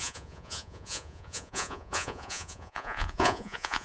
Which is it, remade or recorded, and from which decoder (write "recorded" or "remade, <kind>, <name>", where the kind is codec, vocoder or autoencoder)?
remade, vocoder, Vocos